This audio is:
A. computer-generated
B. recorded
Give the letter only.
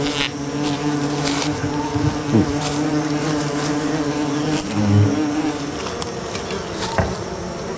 B